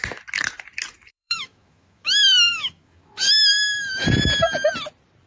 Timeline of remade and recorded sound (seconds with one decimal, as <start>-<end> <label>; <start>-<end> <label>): 0.0-1.1 recorded; 1.1-4.0 remade; 4.0-5.3 recorded